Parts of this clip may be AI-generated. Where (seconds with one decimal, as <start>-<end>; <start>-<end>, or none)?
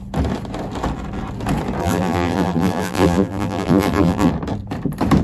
1.8-4.3